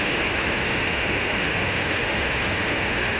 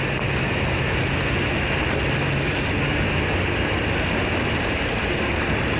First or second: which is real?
second